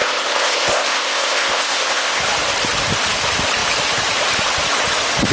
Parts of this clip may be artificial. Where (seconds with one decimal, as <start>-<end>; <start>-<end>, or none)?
0.0-2.2